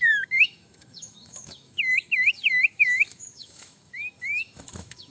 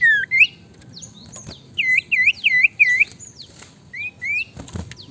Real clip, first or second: second